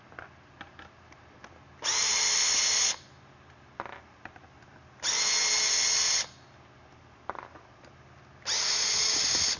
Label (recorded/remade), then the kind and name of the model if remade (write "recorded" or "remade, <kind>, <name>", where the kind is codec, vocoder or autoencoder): recorded